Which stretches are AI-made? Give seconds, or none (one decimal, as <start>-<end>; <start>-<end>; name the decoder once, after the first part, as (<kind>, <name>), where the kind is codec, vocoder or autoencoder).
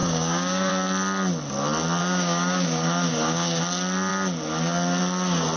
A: 0.0-0.7 (codec, DAC); 2.0-3.6